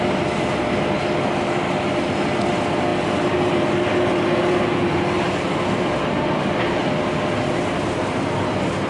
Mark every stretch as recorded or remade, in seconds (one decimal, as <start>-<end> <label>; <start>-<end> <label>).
0.0-8.9 recorded